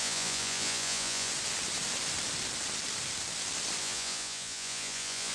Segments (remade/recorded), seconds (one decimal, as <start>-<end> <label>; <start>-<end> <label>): 0.0-1.3 remade; 1.3-3.8 recorded; 3.8-5.3 remade